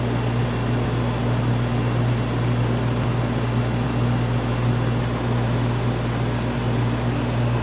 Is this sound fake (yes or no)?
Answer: no